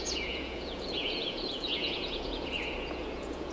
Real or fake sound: fake